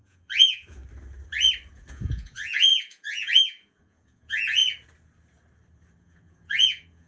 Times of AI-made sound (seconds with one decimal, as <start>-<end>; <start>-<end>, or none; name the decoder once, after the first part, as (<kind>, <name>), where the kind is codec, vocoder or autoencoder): 0.0-0.8 (vocoder, Vocos); 1.9-4.6; 6.0-7.1